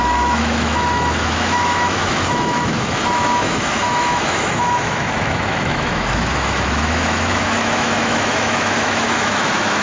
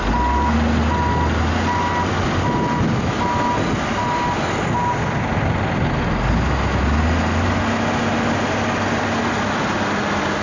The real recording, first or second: second